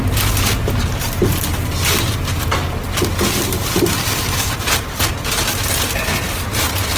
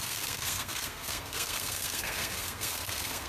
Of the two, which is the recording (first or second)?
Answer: first